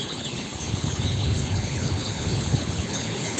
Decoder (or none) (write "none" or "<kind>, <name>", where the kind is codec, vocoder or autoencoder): codec, HILCodec